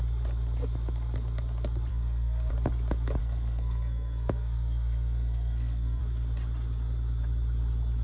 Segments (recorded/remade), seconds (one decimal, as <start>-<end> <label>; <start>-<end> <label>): 0.0-1.9 recorded; 1.9-2.5 remade; 2.5-3.2 recorded; 3.2-6.0 remade; 6.0-8.0 recorded